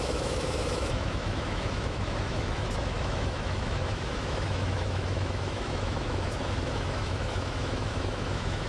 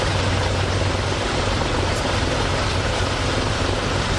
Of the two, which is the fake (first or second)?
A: first